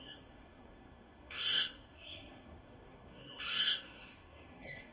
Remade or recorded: remade